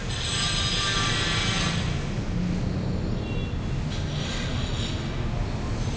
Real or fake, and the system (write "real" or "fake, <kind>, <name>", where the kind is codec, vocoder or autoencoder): real